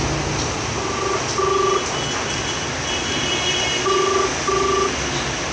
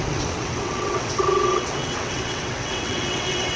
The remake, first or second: second